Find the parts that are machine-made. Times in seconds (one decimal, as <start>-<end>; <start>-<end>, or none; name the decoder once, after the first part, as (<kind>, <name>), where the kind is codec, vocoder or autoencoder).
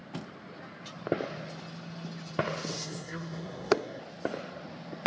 2.7-4.0 (codec, SNAC)